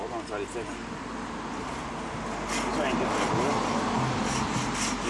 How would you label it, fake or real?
real